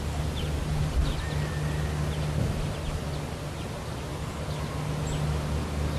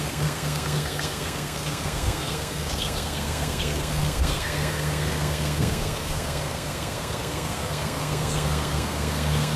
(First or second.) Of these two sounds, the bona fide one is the first